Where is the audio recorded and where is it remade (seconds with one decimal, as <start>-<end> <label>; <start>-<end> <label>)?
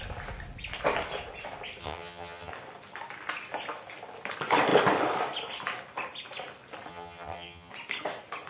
0.0-1.8 recorded; 1.8-2.5 remade; 2.5-6.9 recorded; 6.9-7.7 remade; 7.7-8.5 recorded